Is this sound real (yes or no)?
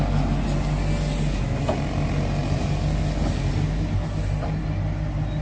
yes